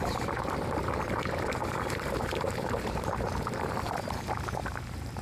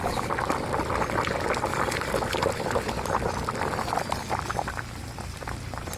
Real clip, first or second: second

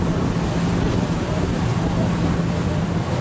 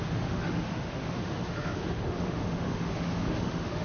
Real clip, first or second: first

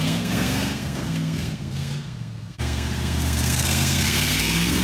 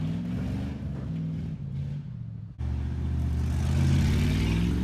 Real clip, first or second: second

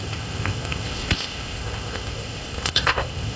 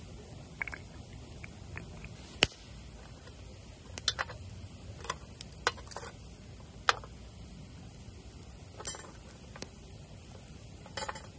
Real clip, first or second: second